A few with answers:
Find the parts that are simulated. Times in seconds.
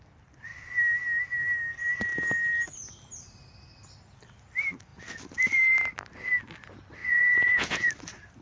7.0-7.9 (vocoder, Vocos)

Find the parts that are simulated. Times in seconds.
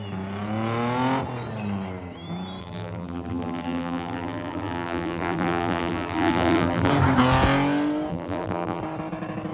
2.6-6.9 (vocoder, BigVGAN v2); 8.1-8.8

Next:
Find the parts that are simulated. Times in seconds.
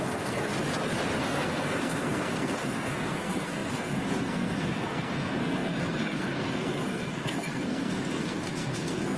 0.0-0.5 (codec, SNAC); 1.2-9.2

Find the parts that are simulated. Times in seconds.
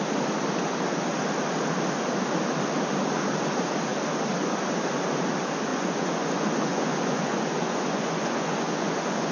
5.7-9.3 (vocoder, Vocos)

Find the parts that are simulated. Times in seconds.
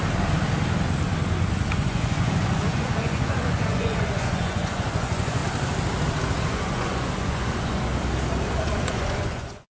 1.7-5.4 (vocoder, Vocos); 6.5-7.9; 8.5-9.7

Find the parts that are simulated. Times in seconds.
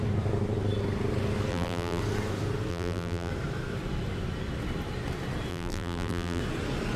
1.5-2.0 (vocoder, BigVGAN v2); 2.7-3.3; 5.5-6.4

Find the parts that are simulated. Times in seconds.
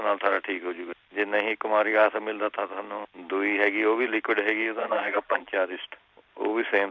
4.8-5.5 (vocoder, BigVGAN v2)